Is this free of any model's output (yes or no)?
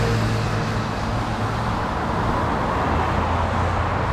yes